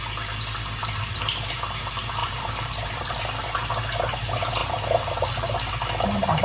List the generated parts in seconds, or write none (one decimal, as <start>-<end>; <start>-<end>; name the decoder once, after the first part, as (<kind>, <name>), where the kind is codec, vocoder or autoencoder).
0.8-1.3 (vocoder, BigVGAN v2); 2.2-3.2